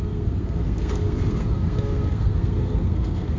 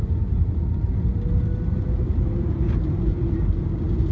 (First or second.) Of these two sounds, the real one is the second